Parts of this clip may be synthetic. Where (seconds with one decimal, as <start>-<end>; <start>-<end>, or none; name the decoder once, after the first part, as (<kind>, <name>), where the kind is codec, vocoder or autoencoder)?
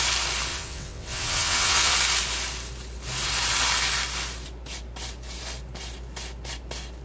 0.5-1.9 (vocoder, WaveNeXt)